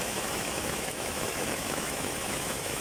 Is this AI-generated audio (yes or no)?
yes